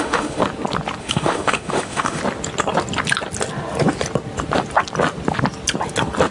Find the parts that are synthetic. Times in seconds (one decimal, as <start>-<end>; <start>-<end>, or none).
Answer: 0.0-0.4; 1.0-2.2